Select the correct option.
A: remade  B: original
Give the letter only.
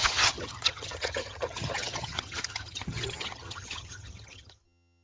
A